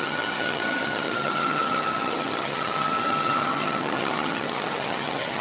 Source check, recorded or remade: remade